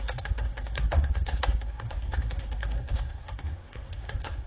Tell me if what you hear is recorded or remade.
remade